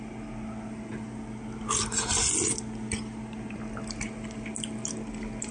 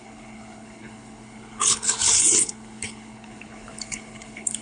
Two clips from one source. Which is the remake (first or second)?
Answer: second